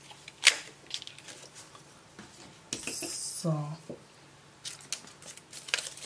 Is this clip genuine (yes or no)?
yes